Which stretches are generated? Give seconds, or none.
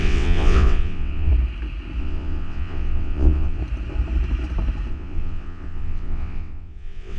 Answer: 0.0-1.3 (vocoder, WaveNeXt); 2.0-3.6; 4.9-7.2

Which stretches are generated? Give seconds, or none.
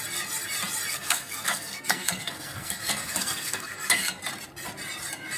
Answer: 0.9-4.1 (codec, SNAC)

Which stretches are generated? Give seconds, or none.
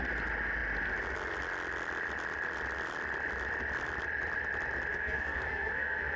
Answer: 4.9-6.2 (codec, SNAC)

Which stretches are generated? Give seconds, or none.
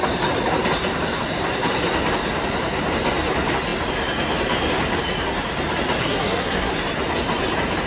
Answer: 6.0-6.7 (codec, SNAC)